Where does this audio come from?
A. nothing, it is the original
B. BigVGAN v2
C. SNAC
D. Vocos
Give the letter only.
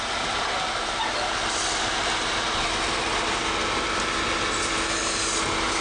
A